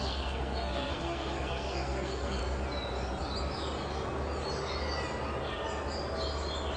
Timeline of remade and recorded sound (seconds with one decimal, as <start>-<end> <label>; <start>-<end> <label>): 0.0-2.4 remade; 2.4-6.8 recorded